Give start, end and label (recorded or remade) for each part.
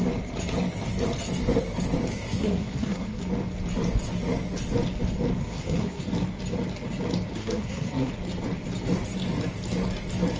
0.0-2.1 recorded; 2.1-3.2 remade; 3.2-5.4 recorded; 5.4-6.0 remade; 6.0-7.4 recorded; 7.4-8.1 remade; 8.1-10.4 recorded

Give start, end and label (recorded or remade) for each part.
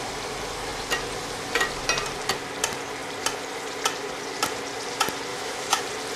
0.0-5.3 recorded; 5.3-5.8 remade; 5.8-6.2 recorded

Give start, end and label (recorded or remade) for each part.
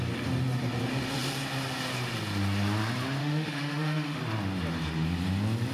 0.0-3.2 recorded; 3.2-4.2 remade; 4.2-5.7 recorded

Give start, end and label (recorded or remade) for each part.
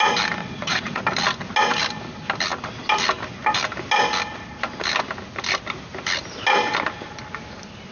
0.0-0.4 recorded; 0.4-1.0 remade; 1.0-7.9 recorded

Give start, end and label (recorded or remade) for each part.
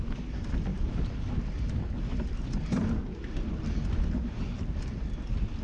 0.0-5.6 recorded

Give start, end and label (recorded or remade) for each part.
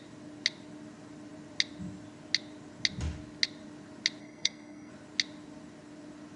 0.0-4.2 recorded; 4.2-4.9 remade; 4.9-6.4 recorded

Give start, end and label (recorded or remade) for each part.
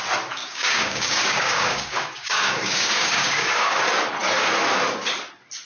0.0-0.4 recorded; 0.4-3.8 remade; 3.8-5.6 recorded